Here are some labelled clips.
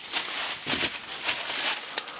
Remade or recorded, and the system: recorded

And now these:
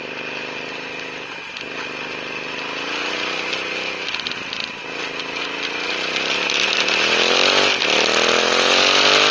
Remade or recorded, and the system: recorded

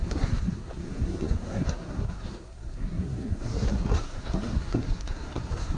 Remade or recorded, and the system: remade, codec, SNAC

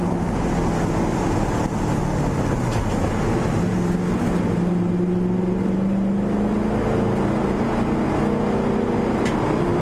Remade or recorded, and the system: recorded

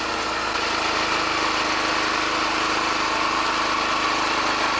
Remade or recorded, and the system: recorded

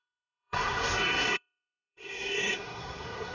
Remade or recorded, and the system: remade, codec, SNAC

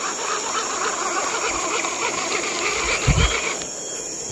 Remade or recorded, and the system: recorded